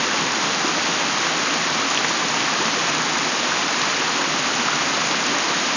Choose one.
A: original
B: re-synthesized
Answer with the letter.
A